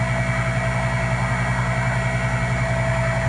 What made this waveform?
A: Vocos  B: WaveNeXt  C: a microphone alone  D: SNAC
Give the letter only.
C